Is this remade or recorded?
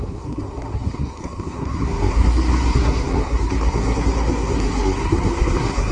remade